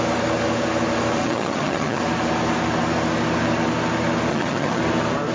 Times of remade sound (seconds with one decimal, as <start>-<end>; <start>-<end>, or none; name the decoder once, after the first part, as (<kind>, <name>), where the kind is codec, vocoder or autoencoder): 1.2-2.0 (vocoder, HiFi-GAN); 4.3-4.8